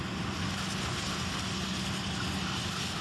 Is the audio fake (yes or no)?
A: no